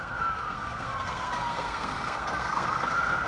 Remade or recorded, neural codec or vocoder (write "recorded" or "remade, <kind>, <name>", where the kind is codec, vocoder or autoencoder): remade, codec, SNAC